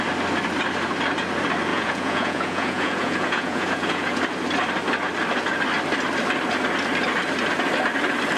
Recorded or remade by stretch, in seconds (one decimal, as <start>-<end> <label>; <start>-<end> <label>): 0.0-1.7 recorded; 1.7-4.2 remade; 4.2-8.4 recorded